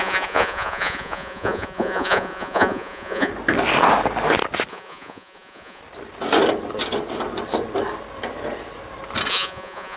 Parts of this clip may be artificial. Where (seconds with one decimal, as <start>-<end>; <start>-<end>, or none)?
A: 0.0-3.3; 4.7-5.8; 9.3-10.0